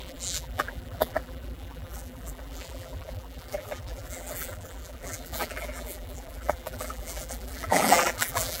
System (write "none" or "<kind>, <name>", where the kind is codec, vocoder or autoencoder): vocoder, BigVGAN v2